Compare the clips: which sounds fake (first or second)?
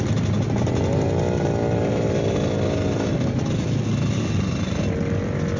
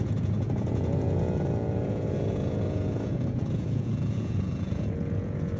second